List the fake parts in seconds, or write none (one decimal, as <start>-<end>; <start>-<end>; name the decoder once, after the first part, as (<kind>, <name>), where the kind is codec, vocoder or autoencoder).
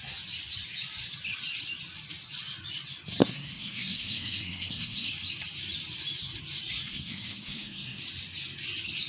3.2-5.1 (codec, SNAC); 6.9-8.0